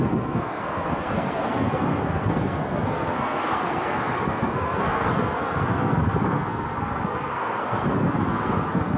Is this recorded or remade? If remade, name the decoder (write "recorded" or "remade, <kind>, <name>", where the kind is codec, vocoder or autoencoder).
remade, codec, SNAC